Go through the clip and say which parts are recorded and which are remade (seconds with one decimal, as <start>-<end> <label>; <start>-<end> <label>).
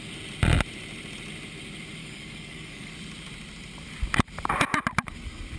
0.0-2.0 recorded; 2.0-2.9 remade; 2.9-5.6 recorded